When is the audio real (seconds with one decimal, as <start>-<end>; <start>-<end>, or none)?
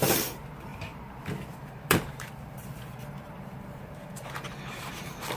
none